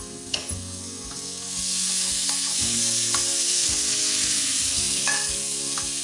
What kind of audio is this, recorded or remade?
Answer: remade